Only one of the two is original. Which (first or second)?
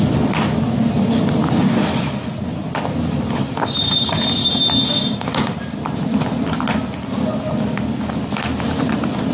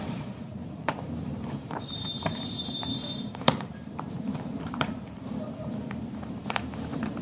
first